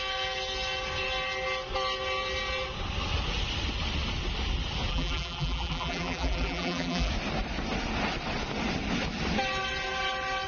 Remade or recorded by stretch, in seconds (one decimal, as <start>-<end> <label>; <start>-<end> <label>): 0.0-4.9 recorded; 4.9-7.1 remade; 7.1-10.5 recorded

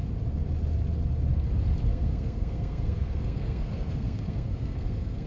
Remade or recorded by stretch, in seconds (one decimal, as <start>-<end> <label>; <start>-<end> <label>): 0.0-1.9 recorded; 1.9-5.3 remade

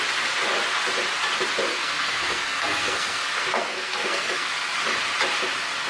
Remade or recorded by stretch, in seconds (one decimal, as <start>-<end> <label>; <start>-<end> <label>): 0.0-1.7 recorded; 1.7-4.5 remade; 4.5-5.9 recorded

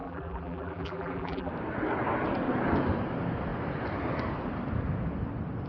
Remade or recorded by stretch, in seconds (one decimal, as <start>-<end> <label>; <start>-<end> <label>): 0.0-1.5 remade; 1.5-5.7 recorded

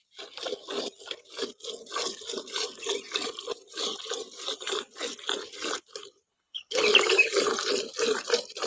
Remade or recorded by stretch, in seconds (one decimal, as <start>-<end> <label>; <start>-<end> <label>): 0.0-6.3 recorded; 6.3-6.8 remade; 6.8-8.7 recorded

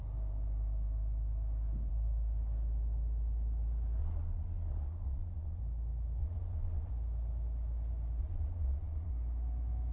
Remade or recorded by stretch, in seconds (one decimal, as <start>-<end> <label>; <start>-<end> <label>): 0.0-4.0 recorded; 4.0-5.6 remade; 5.6-6.2 recorded; 6.2-6.9 remade; 6.9-8.2 recorded; 8.2-9.1 remade; 9.1-9.9 recorded

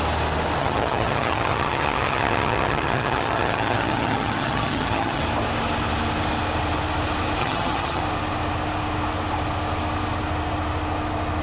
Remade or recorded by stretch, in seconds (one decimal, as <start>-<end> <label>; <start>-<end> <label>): 0.0-0.6 recorded; 0.6-5.2 remade; 5.2-7.4 recorded; 7.4-8.0 remade; 8.0-11.4 recorded

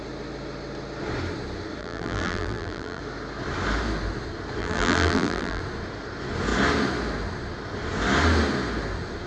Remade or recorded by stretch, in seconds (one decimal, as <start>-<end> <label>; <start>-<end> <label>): 0.0-1.8 recorded; 1.8-3.0 remade; 3.0-4.6 recorded; 4.6-5.6 remade; 5.6-9.3 recorded